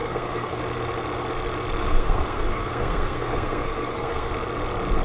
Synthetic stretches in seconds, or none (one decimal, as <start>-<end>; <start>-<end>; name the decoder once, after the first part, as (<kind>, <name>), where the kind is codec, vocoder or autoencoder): 0.0-0.6 (codec, SNAC); 1.8-4.3